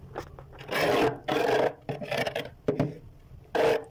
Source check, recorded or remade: recorded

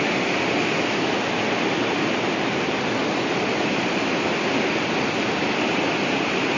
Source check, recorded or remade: recorded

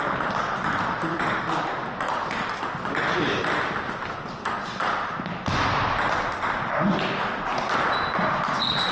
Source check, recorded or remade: remade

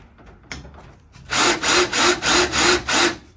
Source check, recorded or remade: recorded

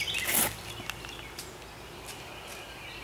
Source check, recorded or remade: recorded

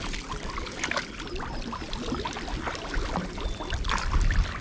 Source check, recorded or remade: remade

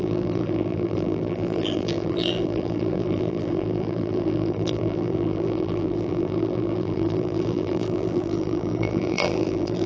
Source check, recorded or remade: remade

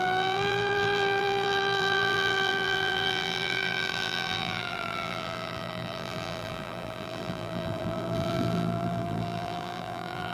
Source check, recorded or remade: remade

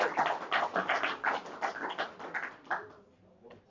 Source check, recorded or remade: recorded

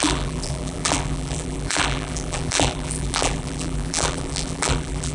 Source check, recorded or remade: remade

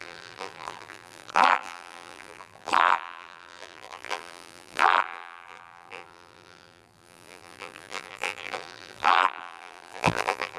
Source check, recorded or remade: remade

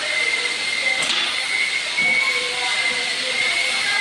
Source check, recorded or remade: recorded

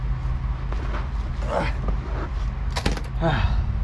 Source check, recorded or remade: recorded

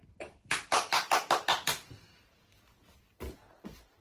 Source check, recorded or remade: remade